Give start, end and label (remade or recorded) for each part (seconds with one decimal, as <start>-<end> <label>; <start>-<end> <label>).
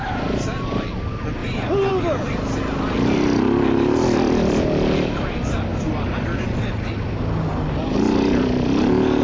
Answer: 0.0-9.2 recorded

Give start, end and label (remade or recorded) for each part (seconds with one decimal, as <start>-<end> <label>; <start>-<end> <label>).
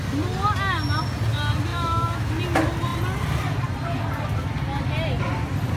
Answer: 0.0-1.7 recorded; 1.7-2.3 remade; 2.3-5.8 recorded